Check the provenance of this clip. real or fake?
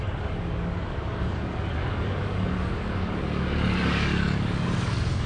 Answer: fake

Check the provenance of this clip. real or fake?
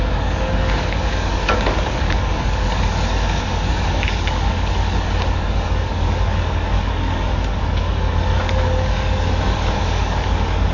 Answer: fake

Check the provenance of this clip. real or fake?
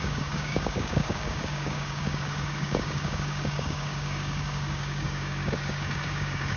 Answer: fake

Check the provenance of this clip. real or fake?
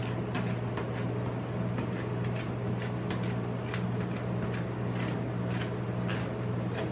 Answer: real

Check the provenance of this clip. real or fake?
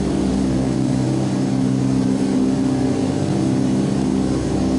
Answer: fake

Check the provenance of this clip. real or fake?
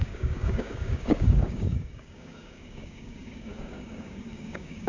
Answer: fake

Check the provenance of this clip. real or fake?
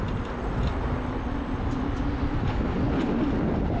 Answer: real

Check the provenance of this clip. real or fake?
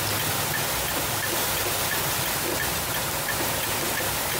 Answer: real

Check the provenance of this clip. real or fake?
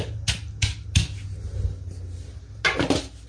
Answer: real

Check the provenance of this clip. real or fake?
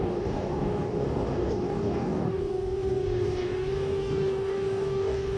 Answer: fake